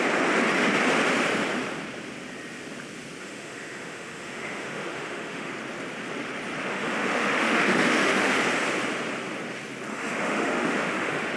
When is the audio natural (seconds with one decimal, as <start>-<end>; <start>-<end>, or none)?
0.0-3.2; 5.5-6.7; 8.4-9.9